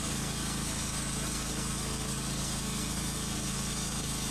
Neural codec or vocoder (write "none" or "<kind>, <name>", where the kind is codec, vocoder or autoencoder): codec, SNAC